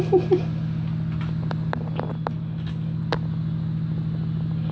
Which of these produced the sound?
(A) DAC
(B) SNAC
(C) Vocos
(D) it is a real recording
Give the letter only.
D